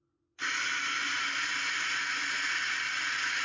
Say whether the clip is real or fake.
real